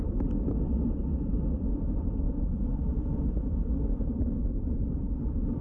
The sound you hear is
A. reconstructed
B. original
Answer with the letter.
A